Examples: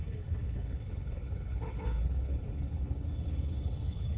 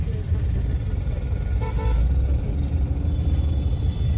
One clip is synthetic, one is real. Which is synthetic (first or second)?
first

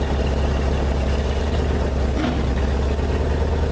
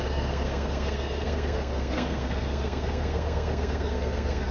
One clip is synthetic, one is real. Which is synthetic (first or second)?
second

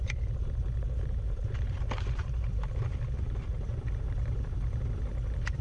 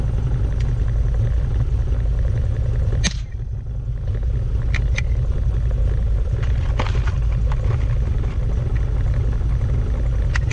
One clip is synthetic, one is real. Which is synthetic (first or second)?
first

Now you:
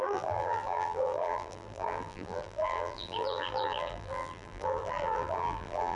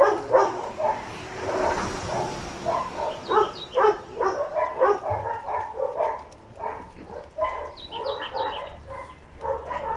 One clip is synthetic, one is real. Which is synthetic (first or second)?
first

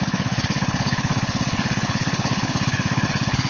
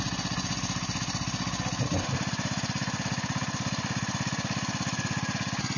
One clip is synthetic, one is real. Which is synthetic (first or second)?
first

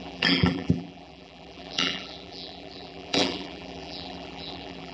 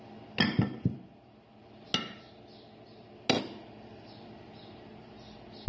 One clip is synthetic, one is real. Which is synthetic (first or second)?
first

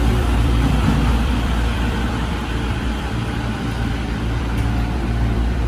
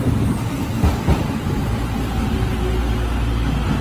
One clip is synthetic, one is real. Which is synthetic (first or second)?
first